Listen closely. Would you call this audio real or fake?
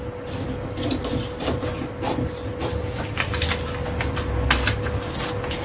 real